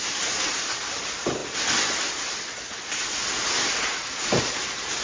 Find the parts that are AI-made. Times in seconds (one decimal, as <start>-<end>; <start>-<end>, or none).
none